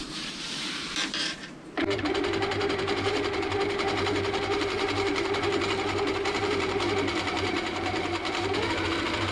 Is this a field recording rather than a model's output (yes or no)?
no